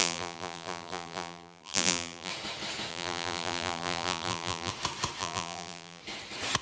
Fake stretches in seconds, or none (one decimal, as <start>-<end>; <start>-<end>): 0.0-2.3; 2.9-4.7; 5.2-6.0